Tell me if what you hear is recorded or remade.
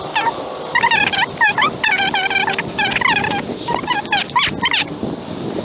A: recorded